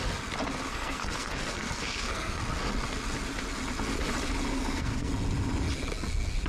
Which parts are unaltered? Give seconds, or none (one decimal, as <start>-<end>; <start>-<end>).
0.0-0.7; 2.4-4.5; 5.1-6.5